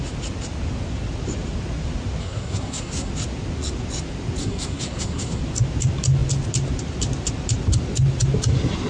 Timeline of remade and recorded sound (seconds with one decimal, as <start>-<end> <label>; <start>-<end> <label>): 0.0-2.2 recorded; 2.2-3.1 remade; 3.1-4.4 recorded; 4.4-5.4 remade; 5.4-8.9 recorded